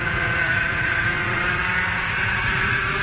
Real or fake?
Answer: fake